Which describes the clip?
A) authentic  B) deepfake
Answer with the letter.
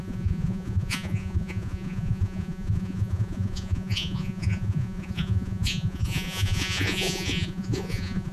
B